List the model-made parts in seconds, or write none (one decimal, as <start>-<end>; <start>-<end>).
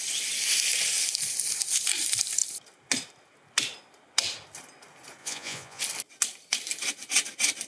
5.2-5.8